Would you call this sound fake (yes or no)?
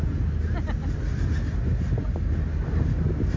no